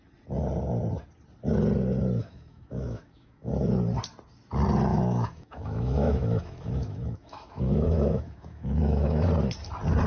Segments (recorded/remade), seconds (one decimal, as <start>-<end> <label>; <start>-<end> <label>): 0.0-2.2 recorded; 2.2-3.5 remade; 3.5-4.9 recorded; 4.9-9.3 remade; 9.3-10.1 recorded